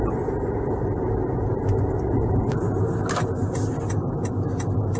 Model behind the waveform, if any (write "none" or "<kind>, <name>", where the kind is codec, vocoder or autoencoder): none